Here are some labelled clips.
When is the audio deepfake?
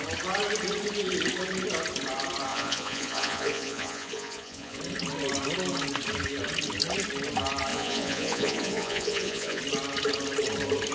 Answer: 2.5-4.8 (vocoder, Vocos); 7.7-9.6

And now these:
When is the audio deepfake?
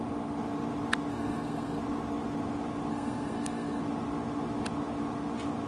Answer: 1.1-1.8 (codec, SNAC); 2.9-3.8